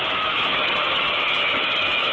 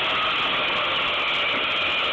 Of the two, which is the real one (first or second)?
second